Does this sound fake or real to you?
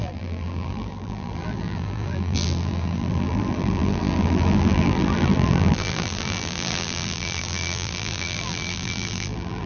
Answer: fake